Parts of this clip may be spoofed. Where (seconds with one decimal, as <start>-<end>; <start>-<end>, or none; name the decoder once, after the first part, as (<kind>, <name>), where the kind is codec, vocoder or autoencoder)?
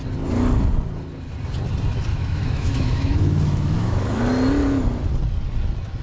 2.1-4.2 (autoencoder, DAC-VAE)